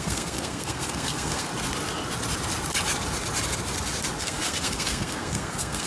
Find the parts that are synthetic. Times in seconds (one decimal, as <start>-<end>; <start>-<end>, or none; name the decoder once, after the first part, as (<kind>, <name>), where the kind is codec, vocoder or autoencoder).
0.0-1.5 (codec, SNAC); 4.2-5.9

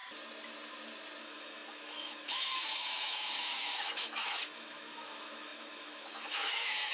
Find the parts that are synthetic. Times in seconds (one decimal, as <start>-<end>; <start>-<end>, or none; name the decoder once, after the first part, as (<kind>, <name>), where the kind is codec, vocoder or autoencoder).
1.2-6.9 (autoencoder, DAC-VAE)

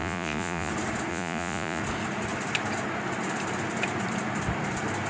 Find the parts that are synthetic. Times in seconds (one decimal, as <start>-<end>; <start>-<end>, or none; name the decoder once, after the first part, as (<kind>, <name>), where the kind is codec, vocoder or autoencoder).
0.0-0.7 (vocoder, Vocos); 1.1-1.8

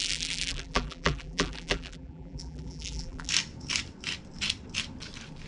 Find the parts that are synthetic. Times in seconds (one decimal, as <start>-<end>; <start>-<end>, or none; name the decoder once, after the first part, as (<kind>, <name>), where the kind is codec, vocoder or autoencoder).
0.0-3.3 (vocoder, BigVGAN v2)